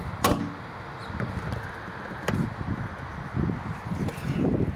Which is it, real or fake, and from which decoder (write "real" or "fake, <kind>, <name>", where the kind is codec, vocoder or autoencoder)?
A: real